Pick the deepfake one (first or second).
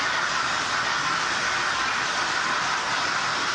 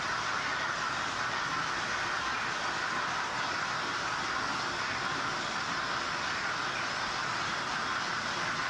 first